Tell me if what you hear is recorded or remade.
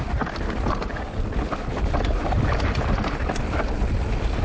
recorded